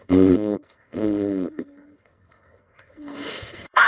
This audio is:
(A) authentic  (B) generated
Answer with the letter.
B